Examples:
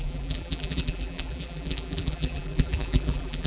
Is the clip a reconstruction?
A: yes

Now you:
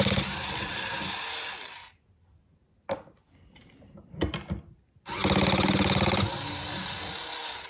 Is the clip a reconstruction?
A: no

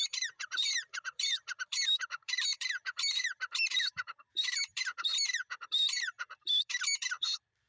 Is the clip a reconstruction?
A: yes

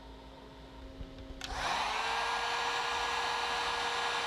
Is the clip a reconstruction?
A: no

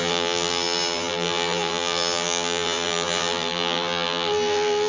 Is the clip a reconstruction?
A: yes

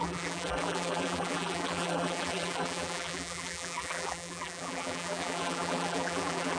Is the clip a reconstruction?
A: yes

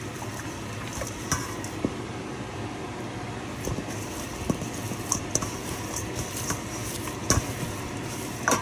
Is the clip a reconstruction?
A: yes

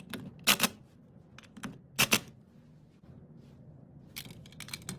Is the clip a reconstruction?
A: no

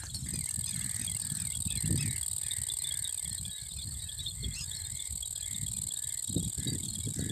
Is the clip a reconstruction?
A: no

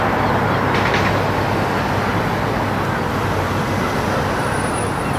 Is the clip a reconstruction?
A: no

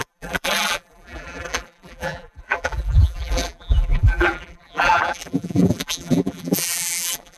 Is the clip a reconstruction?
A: yes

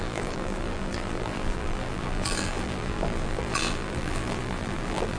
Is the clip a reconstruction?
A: yes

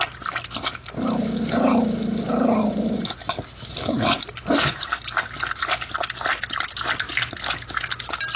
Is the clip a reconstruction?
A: no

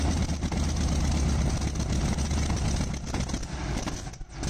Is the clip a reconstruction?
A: no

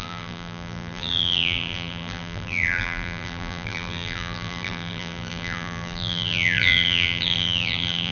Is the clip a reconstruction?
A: yes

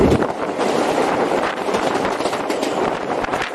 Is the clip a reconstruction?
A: yes